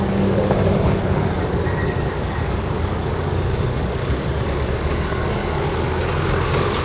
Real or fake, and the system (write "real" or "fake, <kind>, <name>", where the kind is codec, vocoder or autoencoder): fake, codec, DAC